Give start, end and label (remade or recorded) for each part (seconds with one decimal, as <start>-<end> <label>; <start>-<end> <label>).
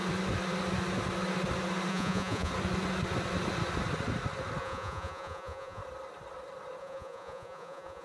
0.0-1.9 recorded; 1.9-2.5 remade; 2.5-4.6 recorded; 4.6-5.8 remade; 5.8-6.8 recorded; 6.8-8.0 remade